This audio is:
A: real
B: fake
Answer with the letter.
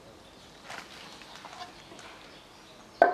A